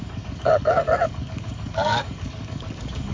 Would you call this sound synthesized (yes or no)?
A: yes